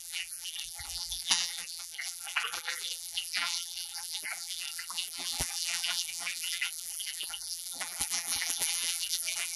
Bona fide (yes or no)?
no